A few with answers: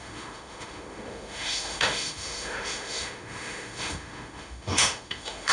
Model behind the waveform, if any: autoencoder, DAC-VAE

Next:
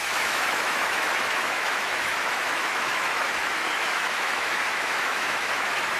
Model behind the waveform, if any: autoencoder, DAC-VAE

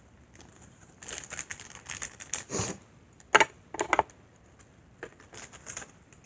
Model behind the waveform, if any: none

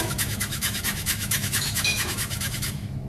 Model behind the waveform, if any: autoencoder, DAC-VAE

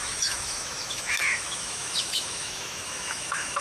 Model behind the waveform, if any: autoencoder, DAC-VAE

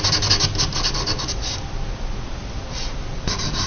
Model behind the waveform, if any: none